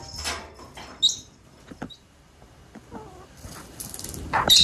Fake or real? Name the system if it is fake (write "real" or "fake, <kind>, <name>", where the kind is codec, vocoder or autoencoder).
real